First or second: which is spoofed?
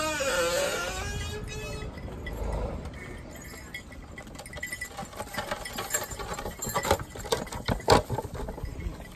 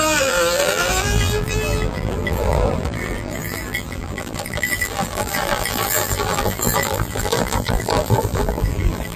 second